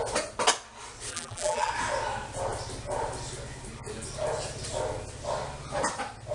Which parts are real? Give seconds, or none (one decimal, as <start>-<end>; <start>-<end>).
0.0-1.1; 1.7-6.3